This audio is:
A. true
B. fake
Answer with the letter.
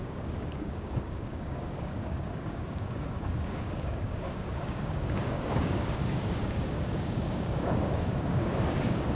B